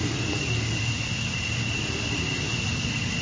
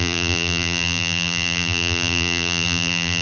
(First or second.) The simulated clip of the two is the second